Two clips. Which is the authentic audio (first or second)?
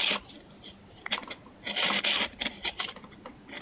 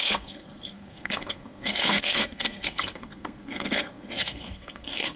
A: first